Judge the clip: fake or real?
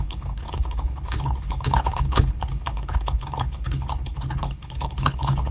fake